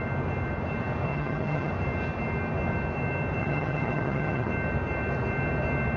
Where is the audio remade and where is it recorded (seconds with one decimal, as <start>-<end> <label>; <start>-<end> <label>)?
0.0-1.1 recorded; 1.1-1.7 remade; 1.7-3.4 recorded; 3.4-4.5 remade; 4.5-6.0 recorded